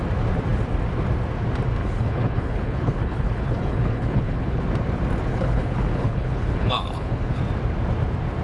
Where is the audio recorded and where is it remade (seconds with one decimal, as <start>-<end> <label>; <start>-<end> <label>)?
0.0-1.8 recorded; 1.8-4.6 remade; 4.6-5.3 recorded; 5.3-7.4 remade; 7.4-8.4 recorded